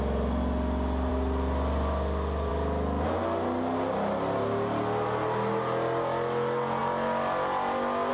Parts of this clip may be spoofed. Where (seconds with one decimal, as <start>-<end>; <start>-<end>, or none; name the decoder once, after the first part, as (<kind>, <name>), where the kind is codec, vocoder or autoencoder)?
none